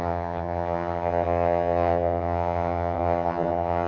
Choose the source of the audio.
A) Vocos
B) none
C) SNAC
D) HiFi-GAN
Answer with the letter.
D